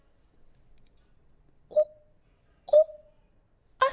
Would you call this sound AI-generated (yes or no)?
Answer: no